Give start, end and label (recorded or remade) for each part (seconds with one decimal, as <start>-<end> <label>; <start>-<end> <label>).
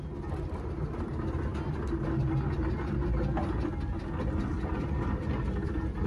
0.0-6.1 recorded